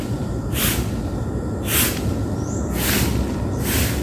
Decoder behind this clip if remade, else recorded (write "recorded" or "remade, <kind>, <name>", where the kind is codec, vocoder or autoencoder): recorded